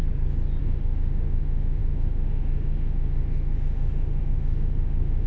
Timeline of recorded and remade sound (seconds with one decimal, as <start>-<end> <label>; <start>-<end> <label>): 0.0-0.6 recorded; 0.6-5.3 remade